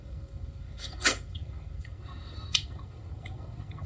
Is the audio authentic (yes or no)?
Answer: no